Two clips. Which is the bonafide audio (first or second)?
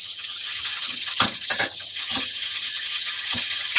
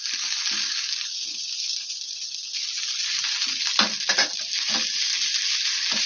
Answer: second